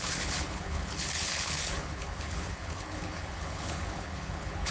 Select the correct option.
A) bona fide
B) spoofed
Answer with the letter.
B